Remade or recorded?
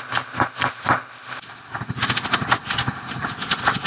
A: recorded